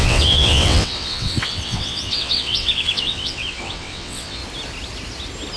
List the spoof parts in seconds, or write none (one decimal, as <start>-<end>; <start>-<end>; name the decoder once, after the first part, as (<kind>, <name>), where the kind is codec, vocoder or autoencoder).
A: 0.0-4.4 (vocoder, WaveNeXt)